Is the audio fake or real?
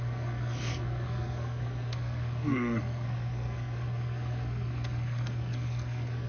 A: fake